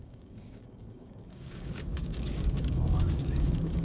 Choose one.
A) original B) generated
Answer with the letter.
B